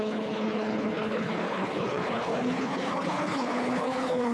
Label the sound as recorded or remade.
remade